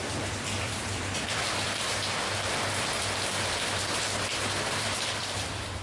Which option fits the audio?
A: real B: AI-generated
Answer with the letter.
B